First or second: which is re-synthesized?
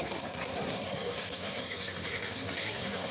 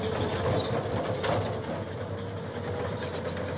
first